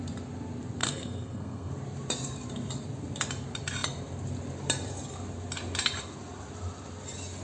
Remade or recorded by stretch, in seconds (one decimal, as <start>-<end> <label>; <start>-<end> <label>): 0.0-0.8 recorded; 0.8-1.7 remade; 1.7-7.4 recorded